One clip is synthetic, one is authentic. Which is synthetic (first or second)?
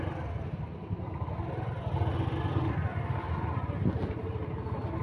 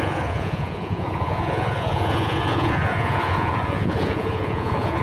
second